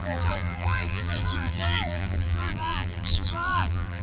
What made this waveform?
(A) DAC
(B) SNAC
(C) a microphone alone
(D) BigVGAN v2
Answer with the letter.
D